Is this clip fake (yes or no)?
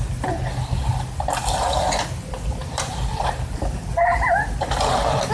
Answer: no